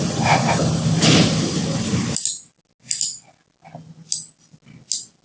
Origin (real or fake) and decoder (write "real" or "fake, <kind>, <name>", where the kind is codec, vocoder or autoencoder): real